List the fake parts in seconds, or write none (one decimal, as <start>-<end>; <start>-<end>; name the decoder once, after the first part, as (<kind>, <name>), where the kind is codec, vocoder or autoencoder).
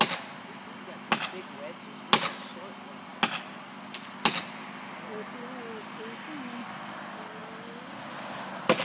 7.4-8.0 (vocoder, BigVGAN v2)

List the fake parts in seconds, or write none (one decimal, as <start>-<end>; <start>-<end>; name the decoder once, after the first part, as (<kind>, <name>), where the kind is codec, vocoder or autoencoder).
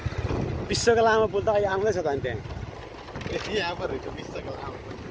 none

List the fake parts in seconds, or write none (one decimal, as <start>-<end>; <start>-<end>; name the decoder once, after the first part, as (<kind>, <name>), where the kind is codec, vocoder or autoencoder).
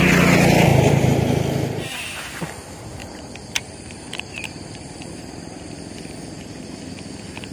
0.7-1.4 (vocoder, BigVGAN v2); 3.0-5.7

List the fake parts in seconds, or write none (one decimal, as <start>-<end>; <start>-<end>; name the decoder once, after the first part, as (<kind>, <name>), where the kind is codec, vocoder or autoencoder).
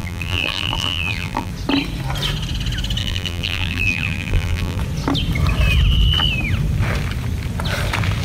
0.0-1.5 (vocoder, BigVGAN v2); 3.0-4.8